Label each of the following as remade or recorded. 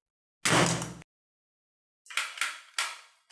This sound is recorded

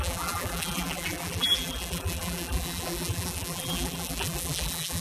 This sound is remade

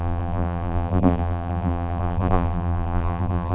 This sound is remade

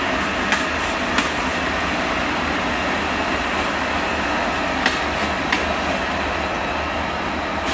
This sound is recorded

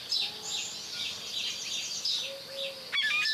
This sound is recorded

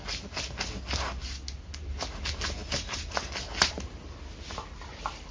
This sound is recorded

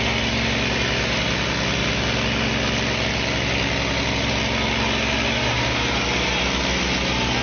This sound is recorded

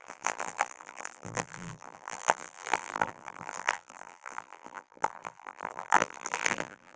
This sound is remade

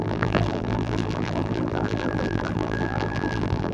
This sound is remade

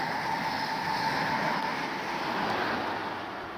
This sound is recorded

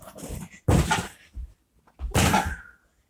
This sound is recorded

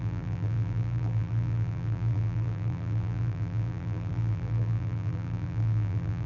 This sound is remade